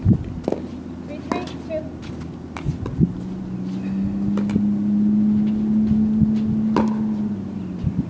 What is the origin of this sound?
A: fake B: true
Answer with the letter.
B